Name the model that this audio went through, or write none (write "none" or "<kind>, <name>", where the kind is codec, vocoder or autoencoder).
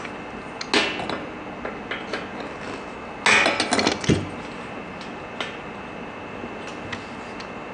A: none